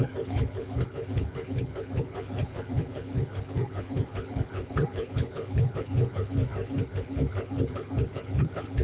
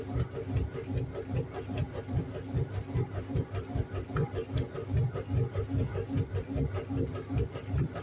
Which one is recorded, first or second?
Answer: second